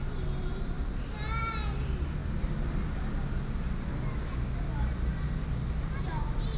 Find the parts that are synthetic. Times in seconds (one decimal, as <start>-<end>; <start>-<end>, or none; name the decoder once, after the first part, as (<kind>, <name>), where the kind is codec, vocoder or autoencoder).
none